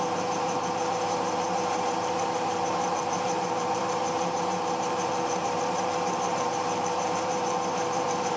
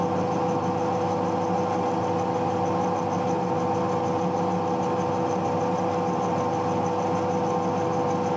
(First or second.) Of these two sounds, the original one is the second